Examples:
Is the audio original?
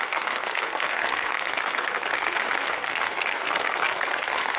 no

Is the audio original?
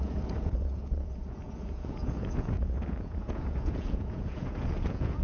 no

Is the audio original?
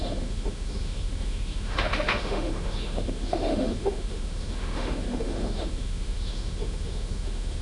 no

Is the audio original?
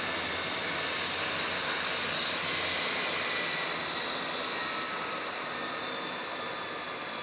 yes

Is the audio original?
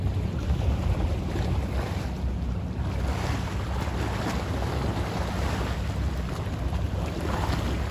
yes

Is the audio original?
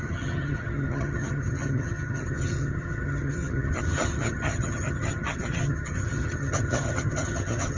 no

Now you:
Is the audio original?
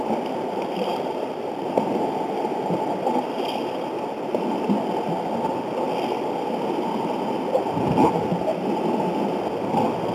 yes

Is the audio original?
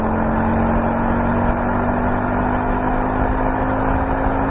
yes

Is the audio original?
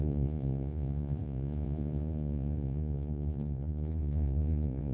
no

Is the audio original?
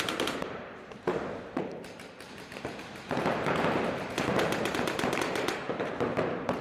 no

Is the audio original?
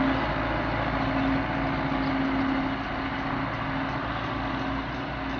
yes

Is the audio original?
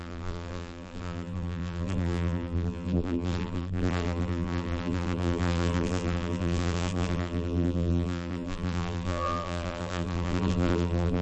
no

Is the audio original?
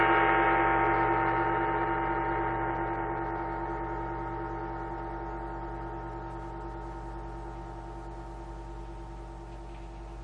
yes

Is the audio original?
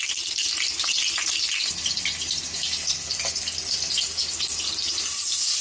yes